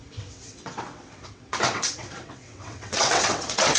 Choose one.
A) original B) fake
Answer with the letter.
B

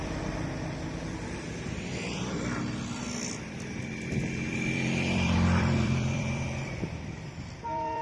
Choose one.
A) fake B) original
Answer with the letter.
A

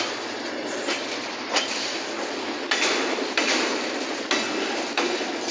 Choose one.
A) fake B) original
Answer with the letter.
B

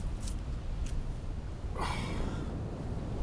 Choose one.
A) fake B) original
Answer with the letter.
B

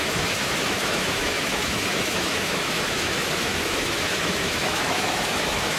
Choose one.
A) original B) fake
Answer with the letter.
B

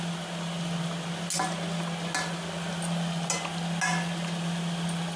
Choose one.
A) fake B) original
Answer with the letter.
B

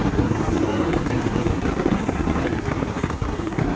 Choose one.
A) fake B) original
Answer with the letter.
A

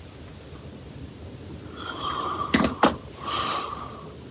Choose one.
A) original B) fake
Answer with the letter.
A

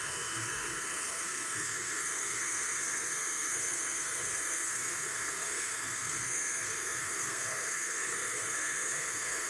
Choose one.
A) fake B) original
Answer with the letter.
A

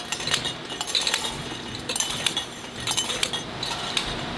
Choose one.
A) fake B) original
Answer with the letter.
B